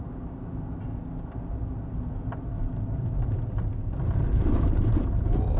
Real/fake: real